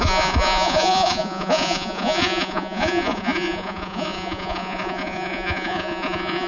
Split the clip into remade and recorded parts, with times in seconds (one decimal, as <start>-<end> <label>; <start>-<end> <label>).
0.0-6.5 remade